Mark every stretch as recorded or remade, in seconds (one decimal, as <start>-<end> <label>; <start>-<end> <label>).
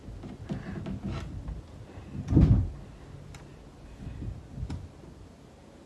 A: 0.0-5.9 recorded